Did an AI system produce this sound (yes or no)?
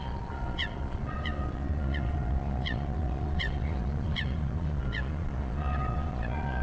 yes